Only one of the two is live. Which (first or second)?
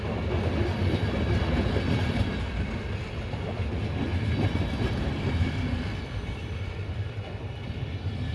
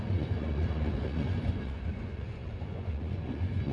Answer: first